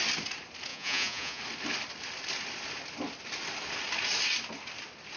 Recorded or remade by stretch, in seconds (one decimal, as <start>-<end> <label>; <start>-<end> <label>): 0.0-0.7 recorded; 0.7-1.4 remade; 1.4-5.2 recorded